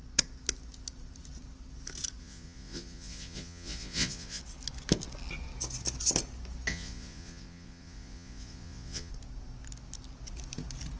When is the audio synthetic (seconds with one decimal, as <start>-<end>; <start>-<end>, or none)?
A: 2.2-4.4; 6.7-9.1